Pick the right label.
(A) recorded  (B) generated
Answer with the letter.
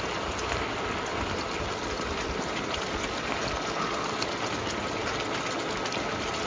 A